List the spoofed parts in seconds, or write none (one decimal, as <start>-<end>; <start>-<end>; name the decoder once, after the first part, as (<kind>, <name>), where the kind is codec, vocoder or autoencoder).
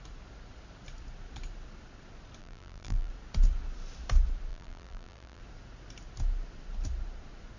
2.4-3.1 (vocoder, BigVGAN v2); 4.5-5.4